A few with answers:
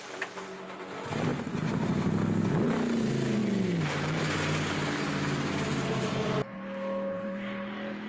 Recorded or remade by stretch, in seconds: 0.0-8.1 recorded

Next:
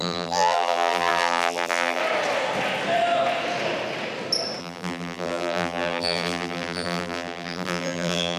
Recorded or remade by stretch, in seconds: 0.0-2.0 remade; 2.0-4.6 recorded; 4.6-8.4 remade

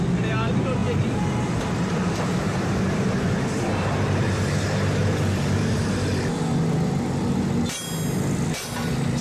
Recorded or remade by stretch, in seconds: 0.0-0.8 recorded; 0.8-5.9 remade; 5.9-9.2 recorded

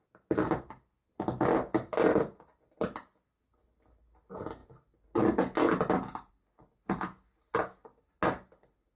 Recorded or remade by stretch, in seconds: 0.0-9.0 recorded

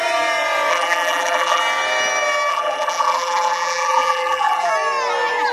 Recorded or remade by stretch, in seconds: 0.0-0.7 recorded; 0.7-1.6 remade; 1.6-2.5 recorded; 2.5-4.7 remade; 4.7-5.5 recorded

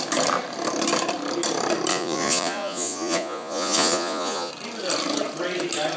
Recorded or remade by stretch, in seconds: 0.0-1.9 recorded; 1.9-4.5 remade; 4.5-6.0 recorded